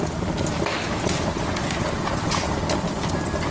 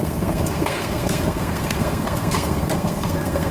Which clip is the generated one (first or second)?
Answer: second